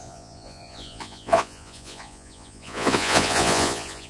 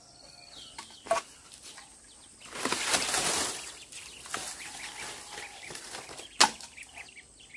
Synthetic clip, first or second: first